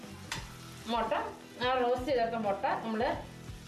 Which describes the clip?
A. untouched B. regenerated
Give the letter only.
A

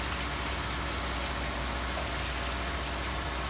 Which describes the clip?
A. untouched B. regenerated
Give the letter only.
A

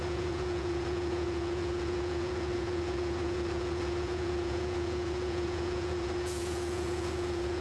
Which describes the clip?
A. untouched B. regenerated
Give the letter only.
B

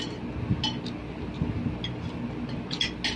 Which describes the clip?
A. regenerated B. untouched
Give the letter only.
B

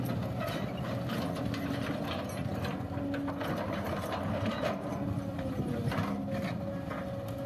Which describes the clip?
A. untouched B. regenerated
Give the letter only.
A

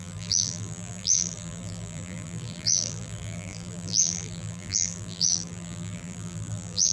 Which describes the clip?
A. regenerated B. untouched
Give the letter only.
A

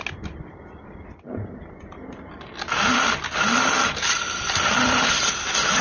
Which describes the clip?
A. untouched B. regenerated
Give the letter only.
A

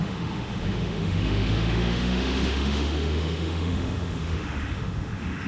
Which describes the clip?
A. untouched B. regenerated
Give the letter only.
B